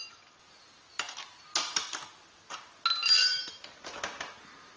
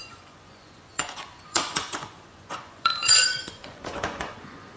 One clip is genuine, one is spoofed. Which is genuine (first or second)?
first